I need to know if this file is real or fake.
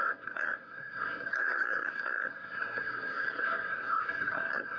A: fake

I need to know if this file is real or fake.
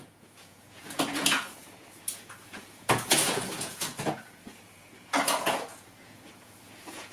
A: fake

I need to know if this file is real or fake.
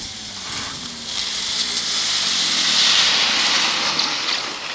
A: real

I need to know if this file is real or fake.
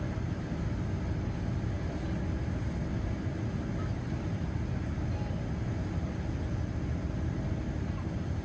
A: real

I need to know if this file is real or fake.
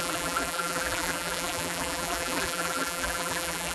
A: fake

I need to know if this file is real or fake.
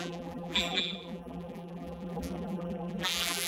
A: fake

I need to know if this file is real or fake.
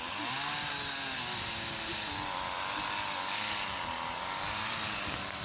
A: real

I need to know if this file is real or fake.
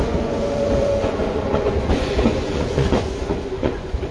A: fake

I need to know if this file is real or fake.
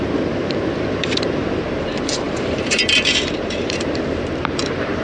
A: fake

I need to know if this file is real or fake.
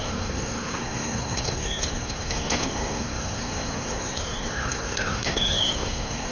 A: fake